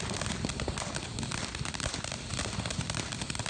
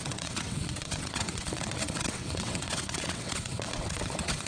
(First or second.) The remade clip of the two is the second